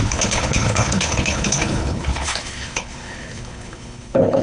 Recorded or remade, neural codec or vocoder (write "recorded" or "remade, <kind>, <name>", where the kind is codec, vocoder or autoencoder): remade, codec, HILCodec